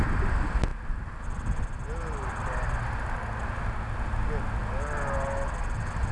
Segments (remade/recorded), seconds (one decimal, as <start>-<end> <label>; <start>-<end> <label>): 0.0-6.1 recorded